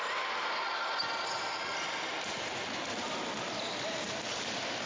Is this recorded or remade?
recorded